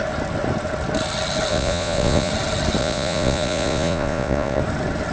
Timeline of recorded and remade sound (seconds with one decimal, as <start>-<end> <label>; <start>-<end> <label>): 0.0-1.5 recorded; 1.5-2.3 remade; 2.3-2.8 recorded; 2.8-4.6 remade; 4.6-5.1 recorded